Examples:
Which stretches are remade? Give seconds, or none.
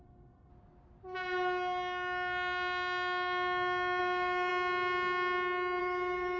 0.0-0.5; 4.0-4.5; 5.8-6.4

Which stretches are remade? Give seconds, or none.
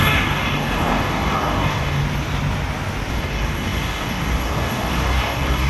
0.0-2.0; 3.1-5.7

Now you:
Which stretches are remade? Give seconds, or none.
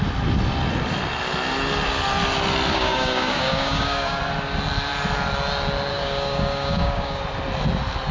2.7-4.2; 5.9-7.2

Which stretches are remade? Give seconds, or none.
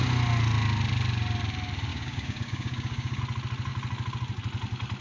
1.9-3.2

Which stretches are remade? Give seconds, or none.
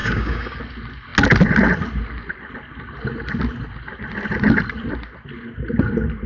0.0-0.6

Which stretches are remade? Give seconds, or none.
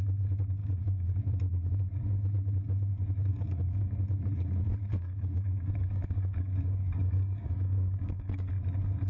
0.6-1.2; 3.3-3.9; 4.8-8.5